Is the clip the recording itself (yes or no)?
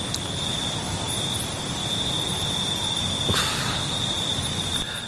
yes